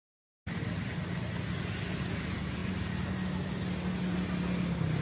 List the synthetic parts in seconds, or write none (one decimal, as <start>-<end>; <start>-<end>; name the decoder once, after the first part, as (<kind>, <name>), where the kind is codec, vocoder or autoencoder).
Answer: none